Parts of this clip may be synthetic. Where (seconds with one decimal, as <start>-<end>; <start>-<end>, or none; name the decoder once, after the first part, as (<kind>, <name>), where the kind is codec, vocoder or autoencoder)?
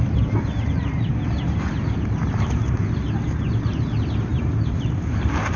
4.3-5.6 (vocoder, BigVGAN v2)